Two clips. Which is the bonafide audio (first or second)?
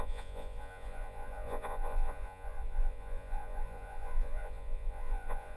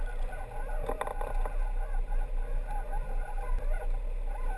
second